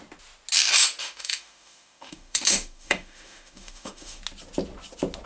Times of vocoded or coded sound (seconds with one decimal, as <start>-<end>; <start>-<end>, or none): 1.0-4.2